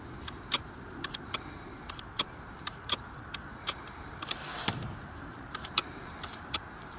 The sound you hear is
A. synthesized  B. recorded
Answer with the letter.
A